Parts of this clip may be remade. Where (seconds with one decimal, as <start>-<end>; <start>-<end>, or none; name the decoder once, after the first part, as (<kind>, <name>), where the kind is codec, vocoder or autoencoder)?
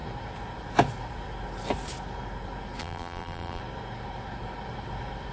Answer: 2.8-3.6 (vocoder, BigVGAN v2)